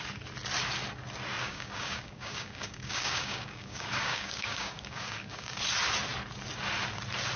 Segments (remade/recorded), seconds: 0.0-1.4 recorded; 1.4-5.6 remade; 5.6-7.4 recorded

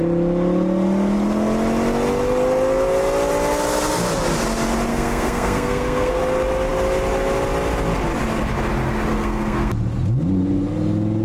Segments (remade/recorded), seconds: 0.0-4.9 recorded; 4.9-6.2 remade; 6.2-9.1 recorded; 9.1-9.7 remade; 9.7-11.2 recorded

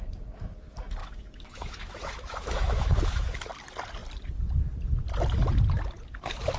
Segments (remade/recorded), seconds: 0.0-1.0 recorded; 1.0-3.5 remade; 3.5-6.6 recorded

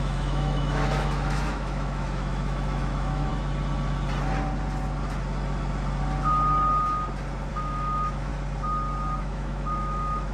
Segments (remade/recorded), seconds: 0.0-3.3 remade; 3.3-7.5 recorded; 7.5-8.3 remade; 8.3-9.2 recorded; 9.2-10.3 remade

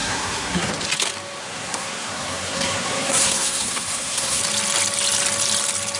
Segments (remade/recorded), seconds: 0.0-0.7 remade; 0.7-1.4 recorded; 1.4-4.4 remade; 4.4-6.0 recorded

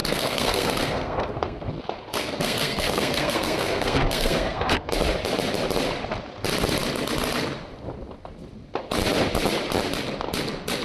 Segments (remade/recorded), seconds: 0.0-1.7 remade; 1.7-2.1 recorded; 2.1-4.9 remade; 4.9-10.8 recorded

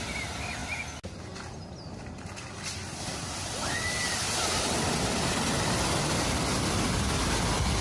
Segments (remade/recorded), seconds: 0.0-7.8 recorded